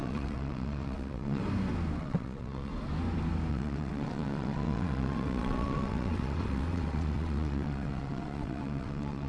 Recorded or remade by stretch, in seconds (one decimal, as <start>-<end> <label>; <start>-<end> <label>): 0.0-1.4 remade; 1.4-2.0 recorded; 2.0-2.7 remade; 2.7-3.5 recorded; 3.5-9.3 remade